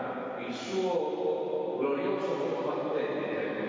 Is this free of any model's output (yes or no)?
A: yes